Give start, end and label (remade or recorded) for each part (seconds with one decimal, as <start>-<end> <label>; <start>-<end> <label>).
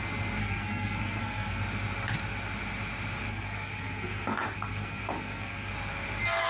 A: 0.0-0.4 recorded; 0.4-1.6 remade; 1.6-3.3 recorded; 3.3-5.7 remade; 5.7-6.5 recorded